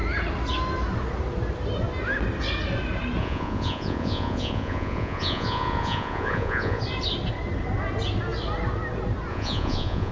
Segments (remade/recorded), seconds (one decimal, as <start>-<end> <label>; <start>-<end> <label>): 0.0-3.2 recorded; 3.2-6.8 remade; 6.8-9.3 recorded; 9.3-10.1 remade